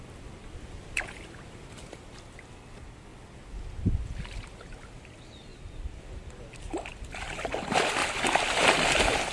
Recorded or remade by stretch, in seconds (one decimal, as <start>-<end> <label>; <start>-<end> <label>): 0.0-5.5 recorded; 5.5-6.3 remade; 6.3-8.0 recorded; 8.0-8.6 remade; 8.6-9.3 recorded